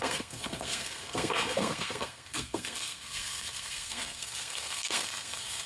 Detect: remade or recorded remade